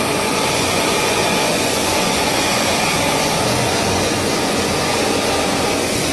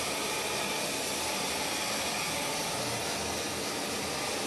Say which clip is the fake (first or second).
first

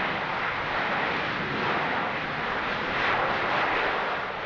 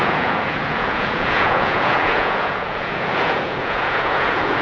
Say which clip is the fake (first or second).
second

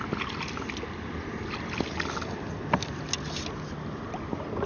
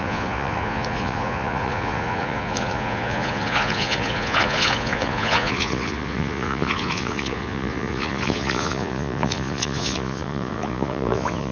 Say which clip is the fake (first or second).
second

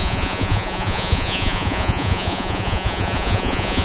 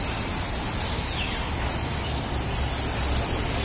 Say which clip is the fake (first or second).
first